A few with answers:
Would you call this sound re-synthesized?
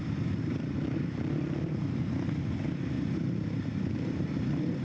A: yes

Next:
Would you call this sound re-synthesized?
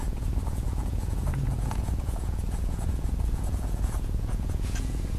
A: yes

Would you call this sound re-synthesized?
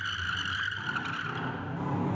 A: no